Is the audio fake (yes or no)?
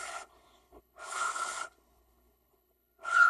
yes